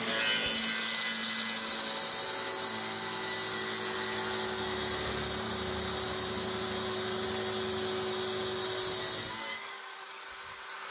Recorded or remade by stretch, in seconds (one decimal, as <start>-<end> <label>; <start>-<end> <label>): 0.0-9.5 recorded; 9.5-10.2 remade; 10.2-10.9 recorded